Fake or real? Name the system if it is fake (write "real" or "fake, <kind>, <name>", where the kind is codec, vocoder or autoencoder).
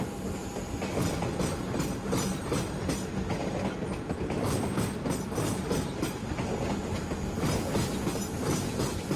real